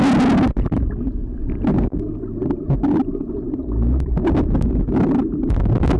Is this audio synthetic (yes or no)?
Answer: no